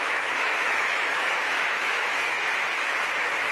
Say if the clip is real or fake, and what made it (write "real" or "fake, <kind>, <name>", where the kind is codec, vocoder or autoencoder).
fake, autoencoder, DAC-VAE